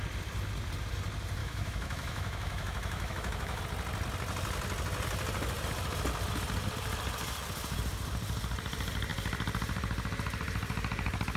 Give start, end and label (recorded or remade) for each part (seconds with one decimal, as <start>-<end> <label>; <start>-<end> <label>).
0.0-1.4 recorded; 1.4-3.6 remade; 3.6-11.4 recorded